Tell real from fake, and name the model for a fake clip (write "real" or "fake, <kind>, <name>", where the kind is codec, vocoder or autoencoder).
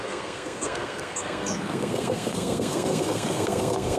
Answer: fake, codec, SNAC